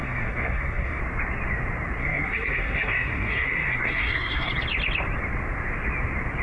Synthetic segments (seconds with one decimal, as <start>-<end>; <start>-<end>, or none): 0.0-1.0; 2.0-4.5